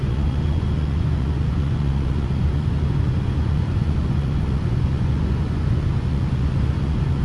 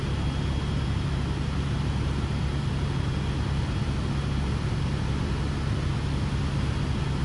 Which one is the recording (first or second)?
second